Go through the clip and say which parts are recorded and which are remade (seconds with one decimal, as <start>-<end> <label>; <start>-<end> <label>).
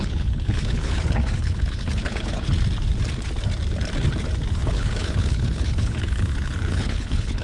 0.0-2.5 remade; 2.5-4.5 recorded; 4.5-7.4 remade